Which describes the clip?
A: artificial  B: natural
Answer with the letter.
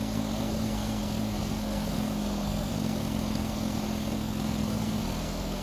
A